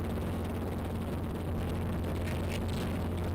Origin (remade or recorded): recorded